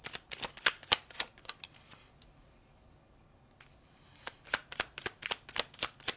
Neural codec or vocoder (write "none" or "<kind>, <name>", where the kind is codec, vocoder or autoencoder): none